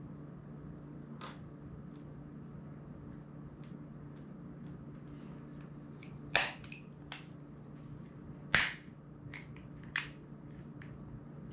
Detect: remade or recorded recorded